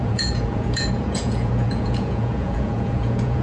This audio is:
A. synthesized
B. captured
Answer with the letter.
A